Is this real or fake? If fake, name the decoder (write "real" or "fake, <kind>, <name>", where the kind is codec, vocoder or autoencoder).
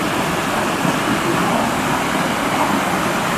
real